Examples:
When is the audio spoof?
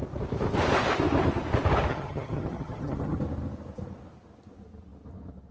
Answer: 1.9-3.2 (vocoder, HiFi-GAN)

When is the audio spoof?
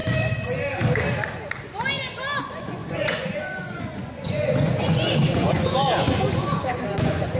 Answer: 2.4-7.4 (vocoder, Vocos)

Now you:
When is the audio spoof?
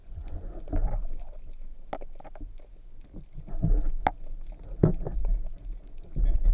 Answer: 0.0-0.7 (vocoder, Vocos)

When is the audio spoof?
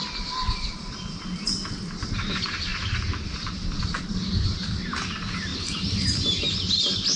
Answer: none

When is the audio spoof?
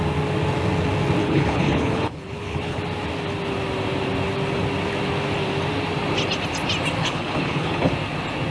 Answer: 1.2-2.8 (codec, HILCodec); 7.0-7.9